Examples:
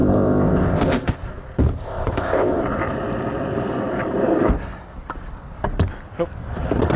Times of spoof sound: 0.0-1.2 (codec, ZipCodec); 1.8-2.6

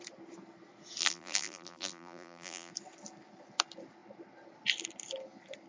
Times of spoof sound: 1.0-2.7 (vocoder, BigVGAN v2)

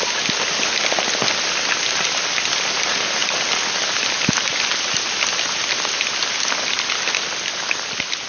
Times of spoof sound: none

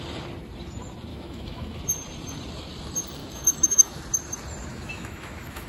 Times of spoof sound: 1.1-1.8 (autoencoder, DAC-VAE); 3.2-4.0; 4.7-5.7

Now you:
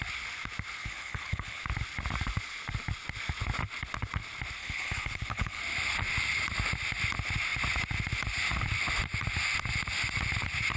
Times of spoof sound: 0.8-1.6 (codec, HILCodec); 4.6-5.6